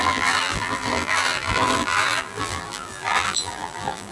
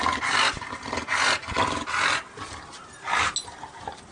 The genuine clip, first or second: second